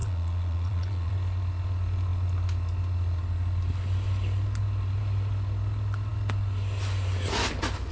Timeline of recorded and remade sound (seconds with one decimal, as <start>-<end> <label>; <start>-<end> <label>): 0.0-1.1 remade; 1.1-7.9 recorded